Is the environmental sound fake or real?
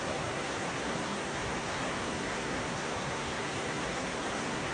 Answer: fake